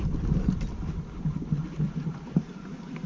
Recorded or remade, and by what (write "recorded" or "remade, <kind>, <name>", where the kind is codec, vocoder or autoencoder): remade, vocoder, BigVGAN v2